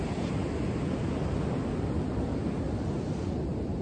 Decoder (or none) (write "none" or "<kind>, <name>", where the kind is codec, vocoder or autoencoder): none